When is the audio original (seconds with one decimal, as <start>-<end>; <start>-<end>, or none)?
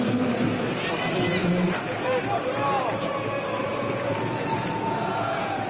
0.0-3.7